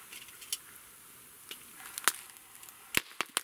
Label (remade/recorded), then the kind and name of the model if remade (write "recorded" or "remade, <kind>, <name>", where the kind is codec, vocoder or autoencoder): recorded